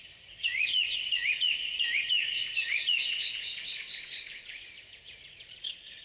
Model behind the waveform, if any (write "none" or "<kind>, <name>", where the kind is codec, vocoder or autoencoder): vocoder, Vocos